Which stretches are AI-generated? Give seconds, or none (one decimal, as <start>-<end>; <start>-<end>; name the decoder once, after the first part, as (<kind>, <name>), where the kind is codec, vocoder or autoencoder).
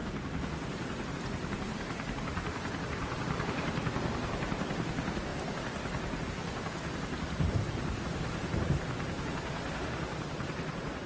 1.1-5.3 (vocoder, BigVGAN v2); 6.3-11.1